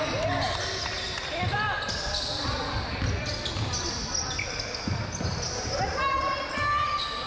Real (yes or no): yes